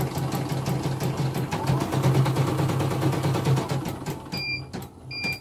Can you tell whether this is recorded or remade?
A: recorded